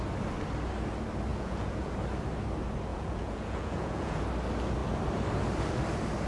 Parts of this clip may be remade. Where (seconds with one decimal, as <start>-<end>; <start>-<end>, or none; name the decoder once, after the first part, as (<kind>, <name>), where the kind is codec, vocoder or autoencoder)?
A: 1.3-1.9 (vocoder, Vocos); 2.9-4.2